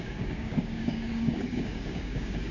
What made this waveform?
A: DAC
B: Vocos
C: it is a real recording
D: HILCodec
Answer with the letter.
A